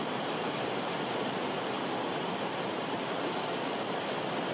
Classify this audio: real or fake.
real